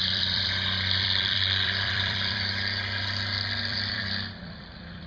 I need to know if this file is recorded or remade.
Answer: remade